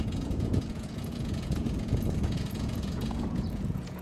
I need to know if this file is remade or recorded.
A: remade